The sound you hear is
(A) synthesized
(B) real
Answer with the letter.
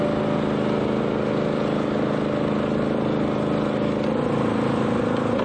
B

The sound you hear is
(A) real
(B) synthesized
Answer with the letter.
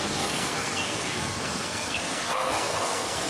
B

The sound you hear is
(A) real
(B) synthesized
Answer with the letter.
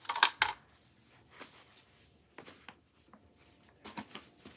A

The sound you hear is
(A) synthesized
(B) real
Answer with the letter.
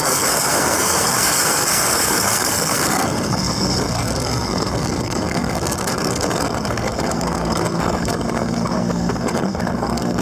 A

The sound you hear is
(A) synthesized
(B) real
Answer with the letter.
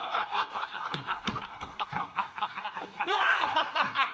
A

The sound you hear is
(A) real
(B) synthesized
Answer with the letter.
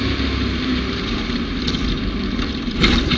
A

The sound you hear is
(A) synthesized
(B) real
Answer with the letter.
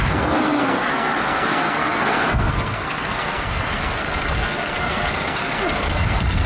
A